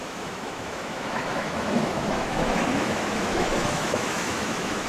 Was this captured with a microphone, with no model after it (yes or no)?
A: no